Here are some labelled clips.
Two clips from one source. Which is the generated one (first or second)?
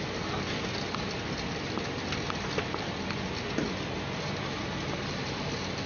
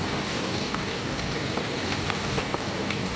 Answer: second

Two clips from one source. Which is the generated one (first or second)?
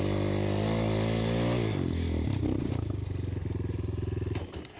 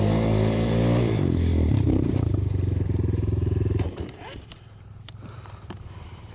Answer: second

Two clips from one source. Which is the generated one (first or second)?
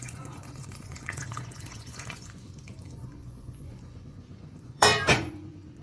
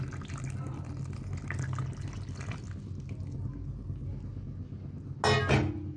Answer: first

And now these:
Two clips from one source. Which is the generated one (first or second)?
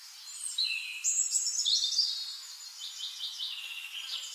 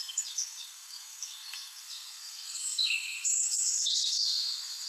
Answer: second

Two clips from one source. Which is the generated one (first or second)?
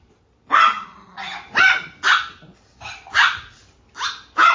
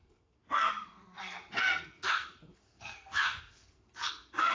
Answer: second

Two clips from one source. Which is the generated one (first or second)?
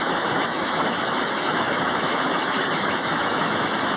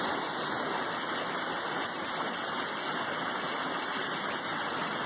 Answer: first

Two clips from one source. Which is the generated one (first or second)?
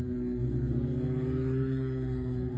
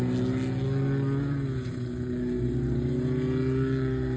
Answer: first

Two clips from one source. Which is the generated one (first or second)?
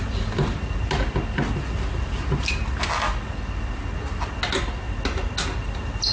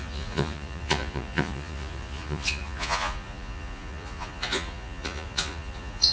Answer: second